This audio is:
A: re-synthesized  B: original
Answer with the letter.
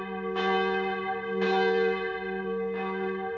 B